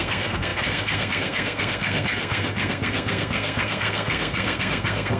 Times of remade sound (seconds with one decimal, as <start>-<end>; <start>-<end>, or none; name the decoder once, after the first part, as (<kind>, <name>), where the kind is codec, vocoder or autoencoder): 0.0-5.2 (codec, SNAC)